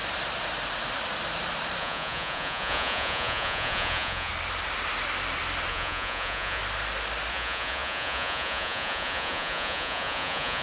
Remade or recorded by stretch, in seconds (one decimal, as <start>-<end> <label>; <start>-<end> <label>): 0.0-1.8 recorded; 1.8-4.3 remade; 4.3-5.7 recorded; 5.7-6.6 remade; 6.6-7.3 recorded; 7.3-10.6 remade